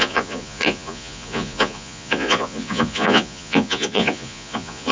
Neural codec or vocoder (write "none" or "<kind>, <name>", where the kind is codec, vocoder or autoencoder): vocoder, Vocos